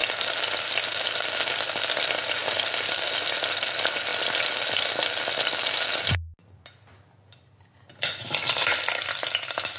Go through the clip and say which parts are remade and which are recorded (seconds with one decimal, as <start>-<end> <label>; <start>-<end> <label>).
0.0-9.8 recorded